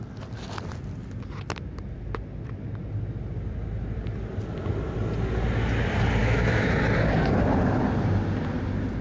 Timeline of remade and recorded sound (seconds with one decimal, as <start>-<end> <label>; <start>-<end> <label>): 0.0-6.2 recorded; 6.2-6.8 remade; 6.8-9.0 recorded